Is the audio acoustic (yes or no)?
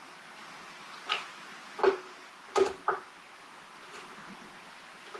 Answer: yes